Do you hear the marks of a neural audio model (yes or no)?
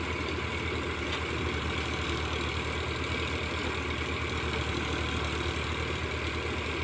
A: no